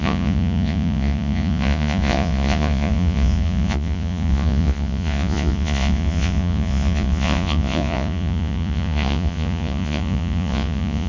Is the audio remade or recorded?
remade